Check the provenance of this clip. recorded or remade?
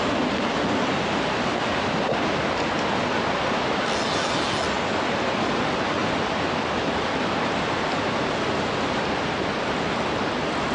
recorded